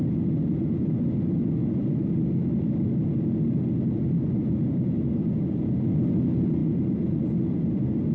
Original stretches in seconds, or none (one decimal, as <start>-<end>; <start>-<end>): 0.0-8.1